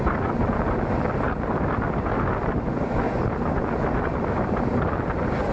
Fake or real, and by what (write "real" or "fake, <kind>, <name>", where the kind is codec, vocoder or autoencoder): real